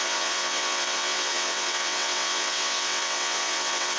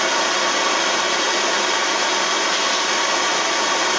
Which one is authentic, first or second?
second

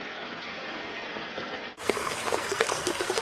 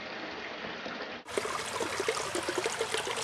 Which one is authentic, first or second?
second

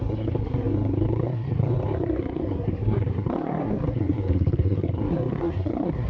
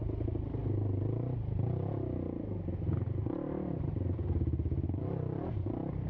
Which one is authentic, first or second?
second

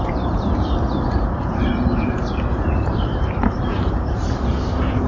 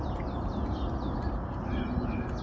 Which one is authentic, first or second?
second